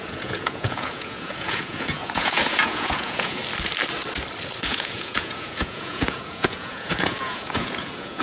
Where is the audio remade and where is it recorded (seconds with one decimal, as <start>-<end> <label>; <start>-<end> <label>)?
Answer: 0.0-3.4 remade; 3.4-4.6 recorded; 4.6-8.2 remade